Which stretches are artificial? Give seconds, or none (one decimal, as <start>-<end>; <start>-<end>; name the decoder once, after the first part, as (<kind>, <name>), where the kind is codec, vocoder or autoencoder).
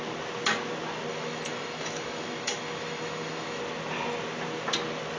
1.1-3.6 (autoencoder, DAC-VAE)